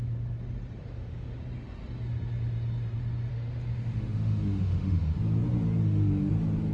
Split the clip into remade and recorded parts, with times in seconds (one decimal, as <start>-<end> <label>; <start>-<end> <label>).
0.0-0.8 recorded; 0.8-1.4 remade; 1.4-3.3 recorded; 3.3-5.2 remade; 5.2-5.8 recorded; 5.8-6.3 remade; 6.3-6.7 recorded